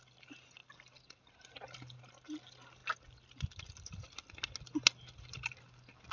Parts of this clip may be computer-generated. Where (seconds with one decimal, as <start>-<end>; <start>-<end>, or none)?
none